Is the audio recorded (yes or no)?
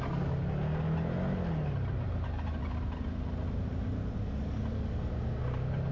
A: yes